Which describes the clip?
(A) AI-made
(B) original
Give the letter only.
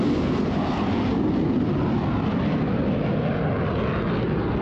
B